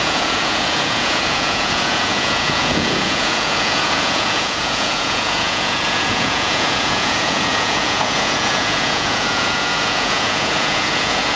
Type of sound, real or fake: fake